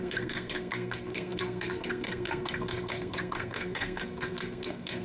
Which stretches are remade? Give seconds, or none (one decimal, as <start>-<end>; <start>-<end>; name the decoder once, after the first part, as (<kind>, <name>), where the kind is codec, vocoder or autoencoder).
0.0-5.0 (codec, SNAC)